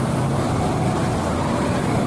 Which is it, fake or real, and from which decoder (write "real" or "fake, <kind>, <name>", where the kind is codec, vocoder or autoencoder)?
fake, vocoder, BigVGAN v2